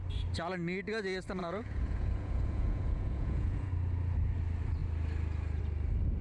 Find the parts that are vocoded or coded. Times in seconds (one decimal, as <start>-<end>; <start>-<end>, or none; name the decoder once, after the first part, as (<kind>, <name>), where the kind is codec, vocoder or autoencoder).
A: 1.4-3.7 (vocoder, Vocos)